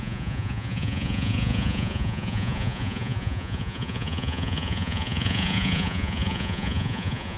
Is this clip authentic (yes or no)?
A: no